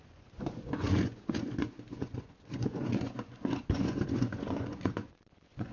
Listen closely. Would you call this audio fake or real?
fake